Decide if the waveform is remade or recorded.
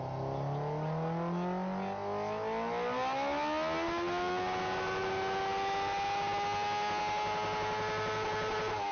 recorded